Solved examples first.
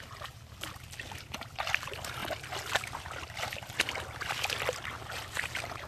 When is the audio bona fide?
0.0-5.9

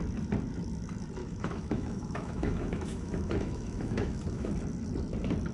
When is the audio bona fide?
0.0-1.2; 4.5-5.5

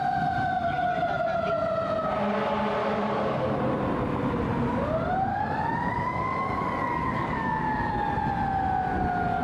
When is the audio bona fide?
0.0-2.8; 3.6-5.3; 7.9-9.4

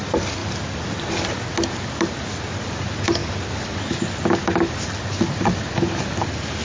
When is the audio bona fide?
0.0-6.6